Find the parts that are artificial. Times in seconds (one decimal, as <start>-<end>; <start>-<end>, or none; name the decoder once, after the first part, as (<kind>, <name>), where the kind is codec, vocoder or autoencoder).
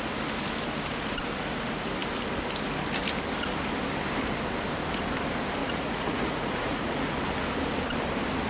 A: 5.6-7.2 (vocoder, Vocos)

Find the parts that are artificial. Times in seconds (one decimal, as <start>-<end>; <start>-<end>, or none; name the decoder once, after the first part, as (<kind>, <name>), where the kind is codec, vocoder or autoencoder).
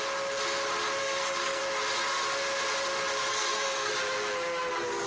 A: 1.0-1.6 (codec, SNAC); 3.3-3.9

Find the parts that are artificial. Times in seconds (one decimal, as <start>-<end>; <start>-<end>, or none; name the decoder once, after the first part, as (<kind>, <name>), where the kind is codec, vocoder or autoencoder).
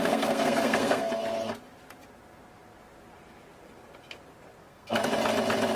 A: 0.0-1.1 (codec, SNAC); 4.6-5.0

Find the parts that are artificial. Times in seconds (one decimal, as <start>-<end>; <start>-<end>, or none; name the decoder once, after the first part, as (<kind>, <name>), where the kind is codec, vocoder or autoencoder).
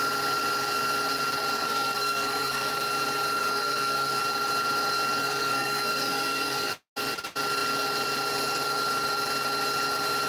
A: 1.5-2.7 (codec, SNAC); 3.4-4.2; 5.2-6.7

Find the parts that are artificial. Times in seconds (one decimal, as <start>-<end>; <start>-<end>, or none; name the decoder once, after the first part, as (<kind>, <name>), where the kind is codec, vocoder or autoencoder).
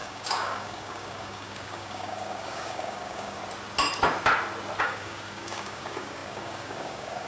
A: 0.0-3.4 (codec, DAC); 4.8-7.3